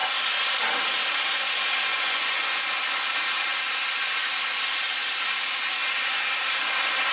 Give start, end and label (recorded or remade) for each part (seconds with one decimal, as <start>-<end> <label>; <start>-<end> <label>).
0.0-1.9 recorded; 1.9-2.6 remade; 2.6-7.1 recorded